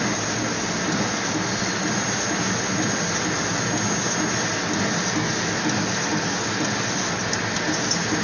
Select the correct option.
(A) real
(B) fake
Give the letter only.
A